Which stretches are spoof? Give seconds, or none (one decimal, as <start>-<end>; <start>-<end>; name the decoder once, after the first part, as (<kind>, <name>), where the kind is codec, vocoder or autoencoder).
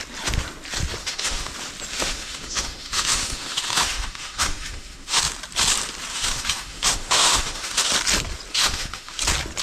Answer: 1.0-1.5 (autoencoder, DAC-VAE); 1.9-5.2; 6.1-7.9; 8.5-9.2